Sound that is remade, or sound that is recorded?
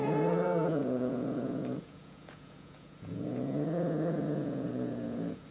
remade